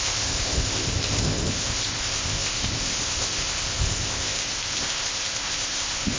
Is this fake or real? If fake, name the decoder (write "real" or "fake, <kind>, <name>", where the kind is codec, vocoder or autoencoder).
fake, codec, ZipCodec